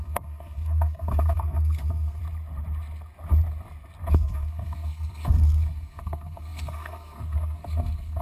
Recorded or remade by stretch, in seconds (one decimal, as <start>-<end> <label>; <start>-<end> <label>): 0.0-2.2 remade; 2.2-4.1 recorded; 4.1-8.2 remade